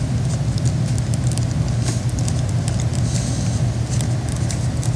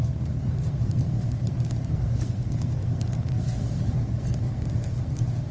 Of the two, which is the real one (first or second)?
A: first